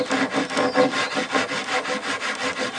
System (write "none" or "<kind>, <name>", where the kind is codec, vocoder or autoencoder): none